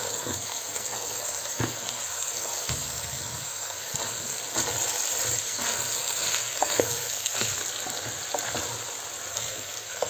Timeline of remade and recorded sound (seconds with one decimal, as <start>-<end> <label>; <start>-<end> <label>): 0.0-4.4 remade; 4.4-5.4 recorded; 5.4-7.6 remade; 7.6-9.3 recorded; 9.3-10.1 remade